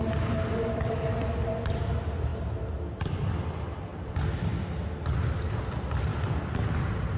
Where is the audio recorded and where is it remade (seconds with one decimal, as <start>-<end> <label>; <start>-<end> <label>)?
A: 0.0-7.2 recorded

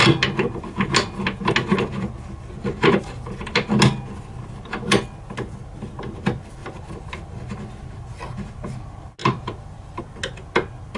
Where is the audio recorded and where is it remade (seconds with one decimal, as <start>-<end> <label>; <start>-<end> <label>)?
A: 0.0-6.6 recorded; 6.6-7.4 remade; 7.4-9.2 recorded; 9.2-10.0 remade; 10.0-11.0 recorded

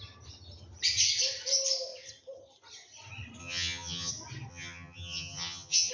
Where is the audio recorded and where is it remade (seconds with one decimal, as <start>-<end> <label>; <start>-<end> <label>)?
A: 0.0-3.4 recorded; 3.4-4.1 remade; 4.1-4.5 recorded; 4.5-5.9 remade

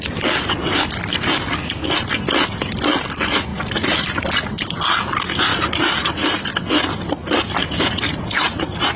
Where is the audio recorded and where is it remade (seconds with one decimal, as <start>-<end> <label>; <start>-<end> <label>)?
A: 0.0-3.5 recorded; 3.5-4.2 remade; 4.2-5.5 recorded; 5.5-6.4 remade; 6.4-7.6 recorded; 7.6-9.0 remade

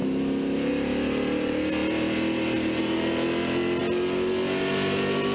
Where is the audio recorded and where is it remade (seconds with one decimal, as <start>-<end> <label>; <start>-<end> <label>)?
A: 0.0-5.3 recorded

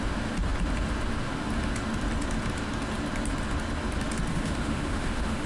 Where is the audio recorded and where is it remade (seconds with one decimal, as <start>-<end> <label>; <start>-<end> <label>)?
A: 0.0-4.3 recorded; 4.3-5.5 remade

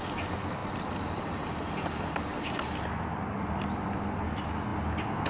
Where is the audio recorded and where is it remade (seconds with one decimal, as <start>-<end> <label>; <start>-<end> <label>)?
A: 0.0-5.3 recorded